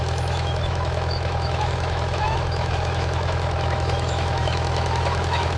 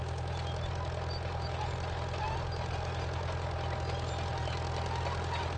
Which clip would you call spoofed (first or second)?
first